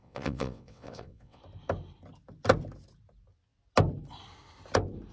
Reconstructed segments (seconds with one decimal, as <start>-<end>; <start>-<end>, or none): 0.0-1.4